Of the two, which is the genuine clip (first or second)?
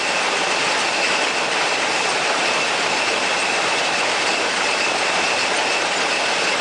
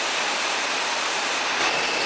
second